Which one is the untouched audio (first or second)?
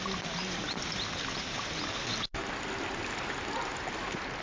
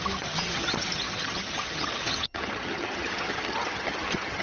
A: first